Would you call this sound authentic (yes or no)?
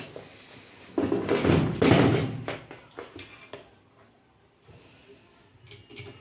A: yes